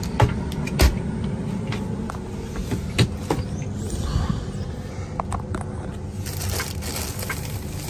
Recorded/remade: recorded